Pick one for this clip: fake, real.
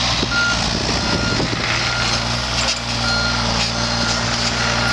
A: real